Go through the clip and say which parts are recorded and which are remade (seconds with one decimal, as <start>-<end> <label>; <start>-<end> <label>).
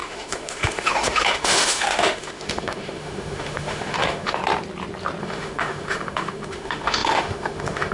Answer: 0.0-4.4 remade; 4.4-5.2 recorded; 5.2-7.9 remade